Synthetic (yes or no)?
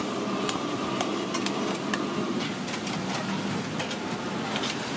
no